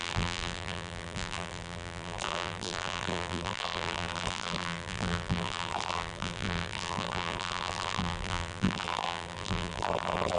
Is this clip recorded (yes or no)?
no